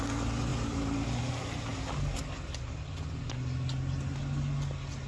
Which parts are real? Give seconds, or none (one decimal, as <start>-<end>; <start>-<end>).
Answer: 0.0-5.1